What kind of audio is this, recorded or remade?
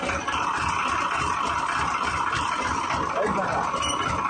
recorded